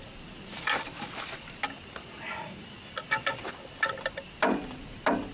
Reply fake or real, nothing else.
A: real